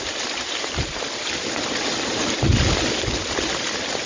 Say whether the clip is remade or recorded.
recorded